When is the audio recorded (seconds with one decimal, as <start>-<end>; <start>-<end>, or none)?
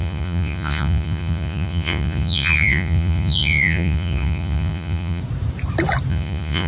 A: 5.2-6.1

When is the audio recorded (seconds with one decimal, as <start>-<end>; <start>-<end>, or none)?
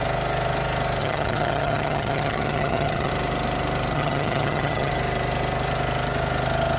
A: 0.0-1.0; 3.1-3.9; 4.9-6.8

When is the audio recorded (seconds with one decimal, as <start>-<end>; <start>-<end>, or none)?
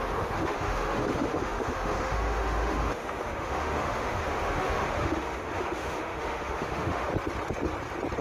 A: 7.1-8.2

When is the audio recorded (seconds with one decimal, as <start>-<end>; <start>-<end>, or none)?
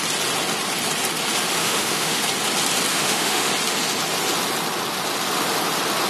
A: 0.0-1.6; 2.2-2.9; 3.5-6.1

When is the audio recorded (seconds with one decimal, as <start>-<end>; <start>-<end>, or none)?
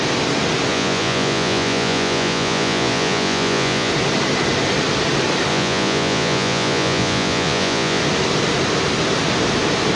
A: 0.0-0.7; 3.9-5.5; 8.0-10.0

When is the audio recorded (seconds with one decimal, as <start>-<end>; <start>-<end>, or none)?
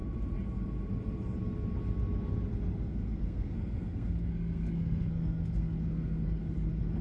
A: 0.0-2.9; 6.4-7.0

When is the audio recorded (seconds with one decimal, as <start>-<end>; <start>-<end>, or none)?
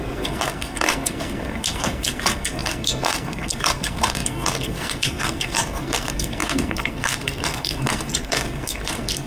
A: none